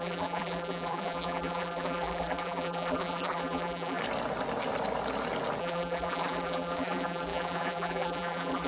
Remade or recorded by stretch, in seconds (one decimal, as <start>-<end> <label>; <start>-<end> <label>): 0.0-4.0 remade; 4.0-5.6 recorded; 5.6-8.7 remade